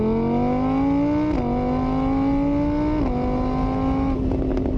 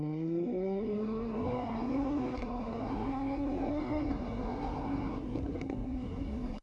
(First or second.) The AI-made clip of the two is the second